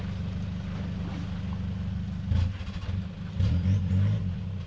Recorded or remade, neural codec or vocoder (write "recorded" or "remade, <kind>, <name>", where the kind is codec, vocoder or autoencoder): recorded